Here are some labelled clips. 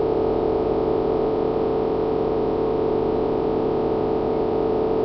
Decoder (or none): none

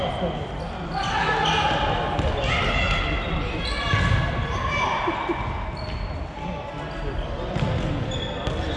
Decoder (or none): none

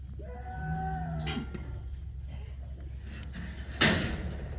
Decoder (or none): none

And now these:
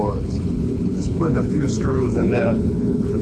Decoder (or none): codec, HILCodec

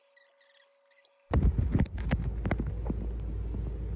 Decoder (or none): none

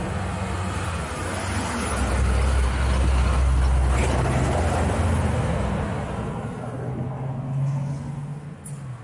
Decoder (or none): none